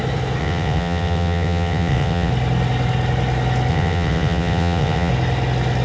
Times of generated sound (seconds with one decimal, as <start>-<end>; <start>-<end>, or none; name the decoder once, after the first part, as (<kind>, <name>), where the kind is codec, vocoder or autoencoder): 0.4-2.3 (vocoder, WaveNeXt); 3.7-5.1